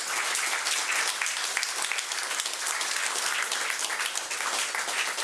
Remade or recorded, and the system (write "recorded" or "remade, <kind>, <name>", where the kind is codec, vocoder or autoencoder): recorded